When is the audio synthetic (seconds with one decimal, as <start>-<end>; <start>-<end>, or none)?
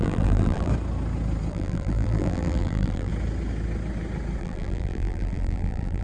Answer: 0.0-0.7; 1.5-3.1; 4.4-6.0